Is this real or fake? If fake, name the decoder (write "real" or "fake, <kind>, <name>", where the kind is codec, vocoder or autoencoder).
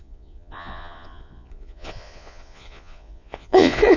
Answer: fake, vocoder, Vocos